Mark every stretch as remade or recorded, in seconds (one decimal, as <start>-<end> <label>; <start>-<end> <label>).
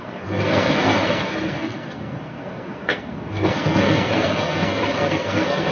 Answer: 0.0-5.7 remade